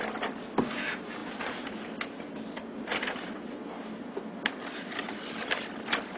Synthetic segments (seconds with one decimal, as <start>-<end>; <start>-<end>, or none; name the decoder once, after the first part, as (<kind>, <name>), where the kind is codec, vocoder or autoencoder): none